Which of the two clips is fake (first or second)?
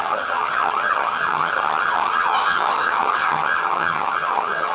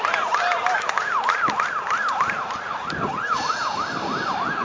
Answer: first